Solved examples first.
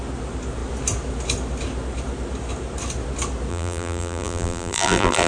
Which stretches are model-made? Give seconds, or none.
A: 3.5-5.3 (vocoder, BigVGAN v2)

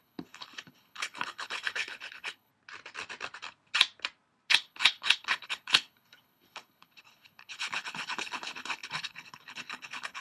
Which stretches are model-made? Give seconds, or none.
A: 0.0-2.5 (codec, HILCodec); 4.5-10.2

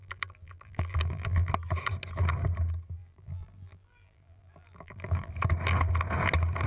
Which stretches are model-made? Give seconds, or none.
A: 0.0-1.5 (vocoder, BigVGAN v2); 3.0-5.3

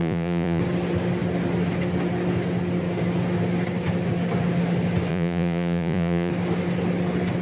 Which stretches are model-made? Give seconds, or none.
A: 0.0-0.6 (vocoder, Vocos); 5.1-6.3